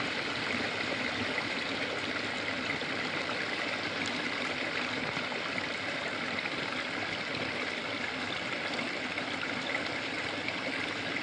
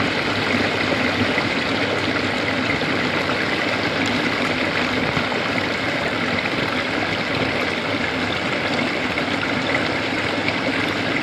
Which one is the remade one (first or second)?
first